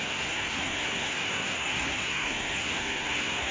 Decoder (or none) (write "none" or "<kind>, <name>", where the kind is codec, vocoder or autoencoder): codec, SNAC